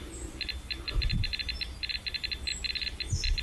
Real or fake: real